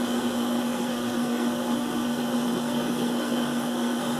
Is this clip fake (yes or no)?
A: yes